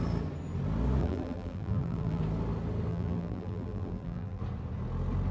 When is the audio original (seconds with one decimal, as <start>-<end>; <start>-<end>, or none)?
0.0-1.0; 2.2-2.9; 4.4-5.3